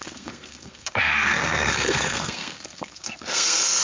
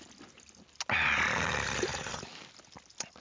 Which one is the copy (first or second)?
first